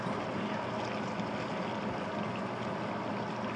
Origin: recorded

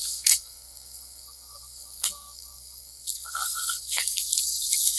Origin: remade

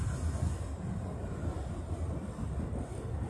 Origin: recorded